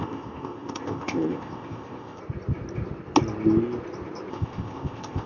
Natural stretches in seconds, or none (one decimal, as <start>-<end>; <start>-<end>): 2.2-4.3